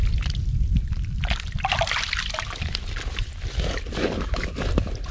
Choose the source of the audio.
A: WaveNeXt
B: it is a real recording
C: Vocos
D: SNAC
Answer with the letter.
B